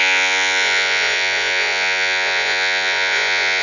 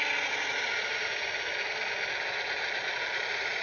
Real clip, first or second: second